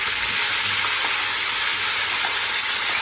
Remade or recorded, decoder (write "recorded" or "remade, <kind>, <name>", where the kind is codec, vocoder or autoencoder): recorded